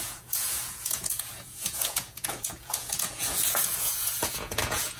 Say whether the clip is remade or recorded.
remade